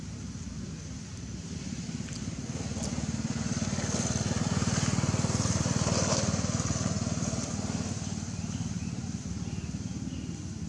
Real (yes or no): yes